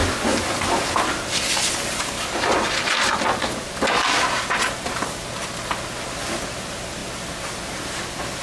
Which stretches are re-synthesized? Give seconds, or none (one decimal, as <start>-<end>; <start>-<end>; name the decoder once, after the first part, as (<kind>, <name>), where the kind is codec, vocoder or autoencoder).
none